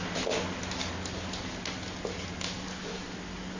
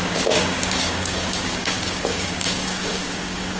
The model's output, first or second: second